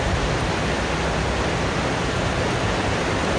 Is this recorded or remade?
recorded